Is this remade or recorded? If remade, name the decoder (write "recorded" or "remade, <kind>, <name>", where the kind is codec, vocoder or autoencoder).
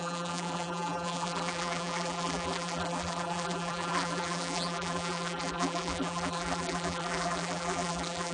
remade, vocoder, BigVGAN v2